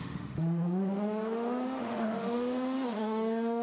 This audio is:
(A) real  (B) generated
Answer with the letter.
B